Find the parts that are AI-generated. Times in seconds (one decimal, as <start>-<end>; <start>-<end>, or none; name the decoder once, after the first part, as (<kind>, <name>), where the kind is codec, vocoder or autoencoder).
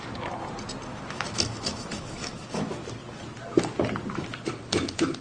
0.9-2.9 (autoencoder, DAC-VAE)